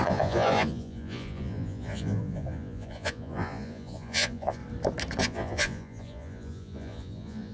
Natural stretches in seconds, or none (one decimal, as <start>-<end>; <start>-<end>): 4.6-5.2